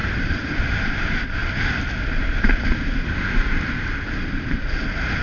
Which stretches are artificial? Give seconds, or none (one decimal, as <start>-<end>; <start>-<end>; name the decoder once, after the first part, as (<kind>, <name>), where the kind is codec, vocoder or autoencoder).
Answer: 0.0-0.6 (vocoder, BigVGAN v2)